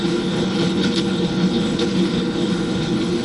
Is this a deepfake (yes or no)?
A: yes